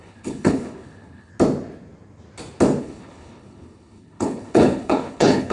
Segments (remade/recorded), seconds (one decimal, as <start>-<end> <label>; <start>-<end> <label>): 0.0-1.3 remade; 1.3-2.8 recorded; 2.8-5.5 remade